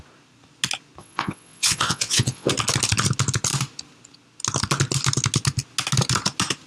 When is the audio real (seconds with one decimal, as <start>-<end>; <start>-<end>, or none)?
0.0-1.0; 2.5-6.7